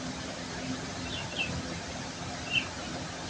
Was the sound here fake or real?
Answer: real